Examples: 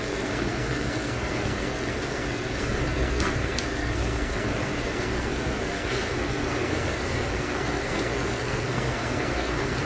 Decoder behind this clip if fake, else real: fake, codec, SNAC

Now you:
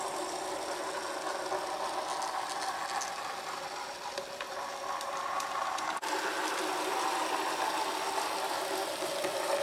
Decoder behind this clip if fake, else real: real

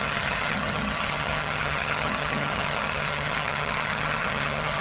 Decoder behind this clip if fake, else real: fake, vocoder, HiFi-GAN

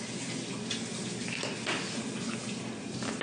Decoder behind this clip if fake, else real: real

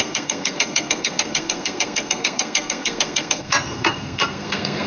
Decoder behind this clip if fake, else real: fake, codec, SNAC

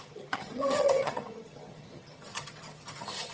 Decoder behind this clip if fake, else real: fake, vocoder, HiFi-GAN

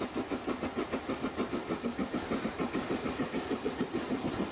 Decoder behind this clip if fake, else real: real